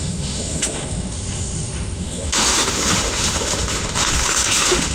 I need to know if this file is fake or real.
fake